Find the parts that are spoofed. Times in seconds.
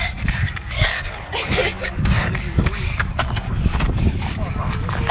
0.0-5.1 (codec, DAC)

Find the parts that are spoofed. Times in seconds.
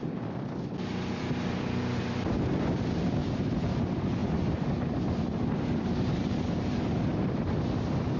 0.0-4.2 (vocoder, BigVGAN v2); 5.5-8.2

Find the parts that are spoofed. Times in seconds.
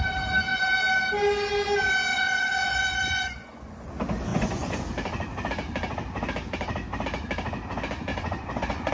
2.1-3.9 (vocoder, Vocos); 4.3-4.8; 8.1-8.9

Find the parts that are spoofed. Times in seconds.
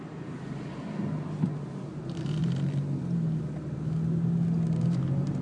none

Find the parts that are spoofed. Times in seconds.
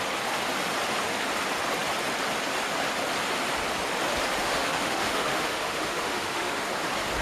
4.4-6.6 (autoencoder, DAC-VAE)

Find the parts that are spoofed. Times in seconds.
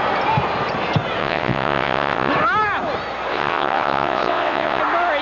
1.2-2.3 (vocoder, WaveNeXt); 3.3-4.8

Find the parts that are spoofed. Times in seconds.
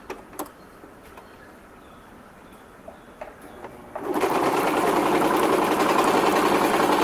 none